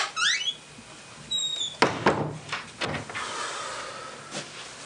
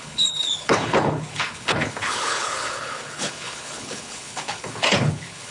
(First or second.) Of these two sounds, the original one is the first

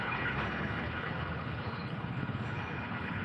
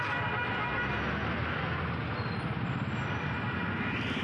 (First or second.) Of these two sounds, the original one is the second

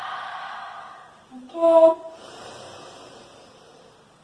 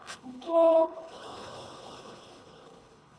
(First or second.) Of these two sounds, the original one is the first